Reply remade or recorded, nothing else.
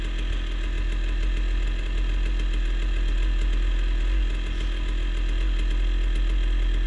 recorded